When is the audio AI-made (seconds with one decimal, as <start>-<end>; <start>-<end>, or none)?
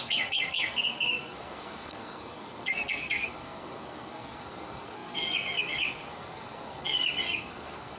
0.0-8.0